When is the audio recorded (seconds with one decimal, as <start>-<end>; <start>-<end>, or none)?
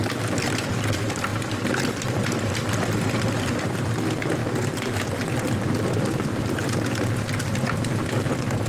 0.0-8.7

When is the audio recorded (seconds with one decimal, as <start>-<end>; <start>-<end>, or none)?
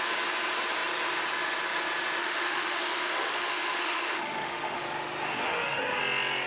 0.0-2.2; 4.8-5.3; 6.0-6.5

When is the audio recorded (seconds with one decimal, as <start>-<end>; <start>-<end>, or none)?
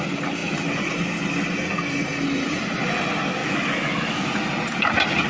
0.0-3.4; 4.3-5.3